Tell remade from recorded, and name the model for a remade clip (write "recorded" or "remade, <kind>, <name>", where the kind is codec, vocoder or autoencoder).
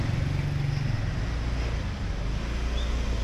recorded